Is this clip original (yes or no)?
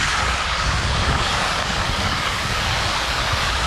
no